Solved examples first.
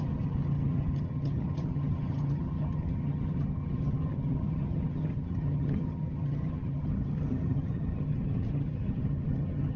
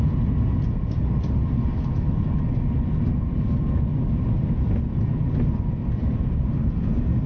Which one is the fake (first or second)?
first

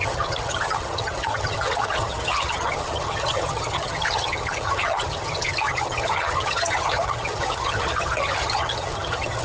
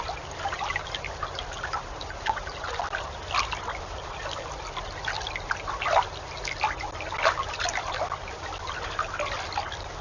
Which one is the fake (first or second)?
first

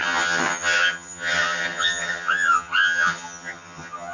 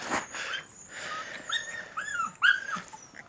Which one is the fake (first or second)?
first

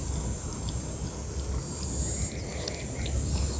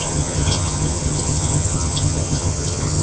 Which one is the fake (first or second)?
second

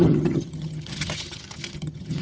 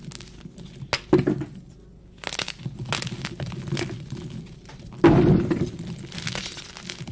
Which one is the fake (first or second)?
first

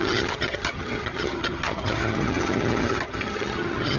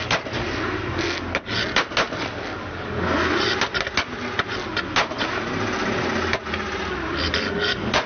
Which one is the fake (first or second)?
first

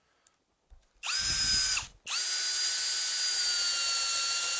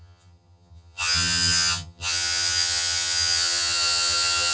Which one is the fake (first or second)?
second